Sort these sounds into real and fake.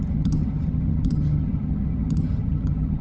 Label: fake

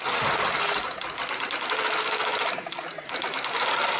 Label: real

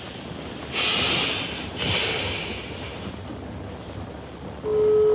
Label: real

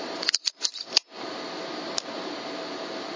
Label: real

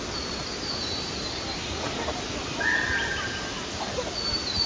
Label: real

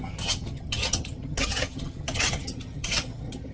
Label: fake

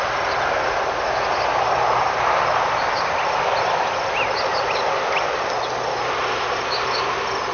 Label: real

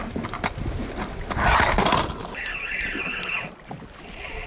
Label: real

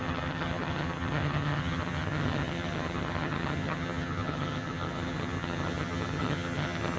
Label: fake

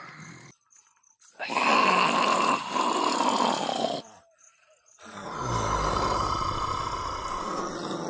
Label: real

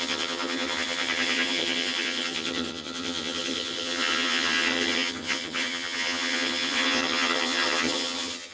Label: fake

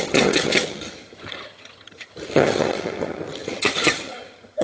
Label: fake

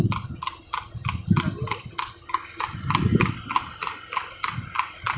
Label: real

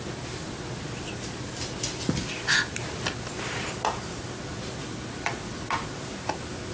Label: real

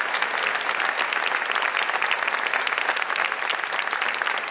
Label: real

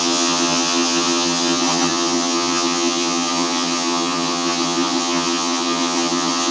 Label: fake